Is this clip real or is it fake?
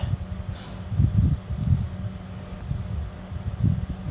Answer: real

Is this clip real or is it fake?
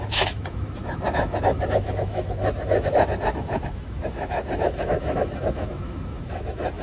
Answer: fake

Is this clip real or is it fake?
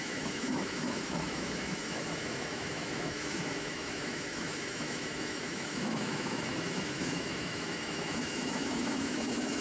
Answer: fake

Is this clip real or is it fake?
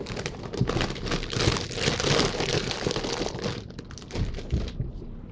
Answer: real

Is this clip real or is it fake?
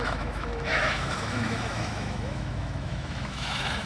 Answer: fake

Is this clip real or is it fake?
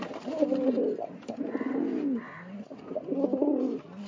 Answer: real